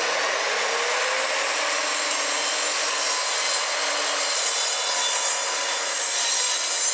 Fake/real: real